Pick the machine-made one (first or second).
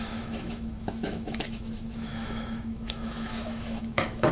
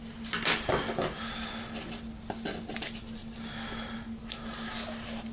first